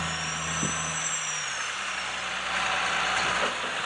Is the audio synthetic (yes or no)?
no